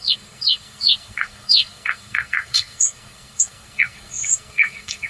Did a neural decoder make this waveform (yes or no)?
yes